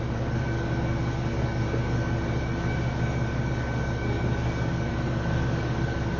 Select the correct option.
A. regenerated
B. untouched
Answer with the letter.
A